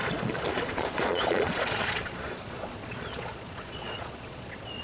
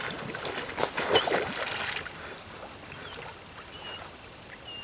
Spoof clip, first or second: first